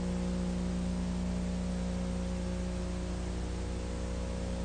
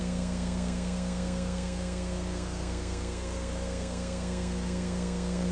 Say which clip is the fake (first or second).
second